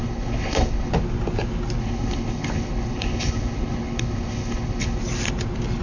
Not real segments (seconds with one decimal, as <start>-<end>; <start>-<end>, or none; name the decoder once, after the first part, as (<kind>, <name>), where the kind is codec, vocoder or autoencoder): 0.0-0.9 (codec, HILCodec); 1.8-5.0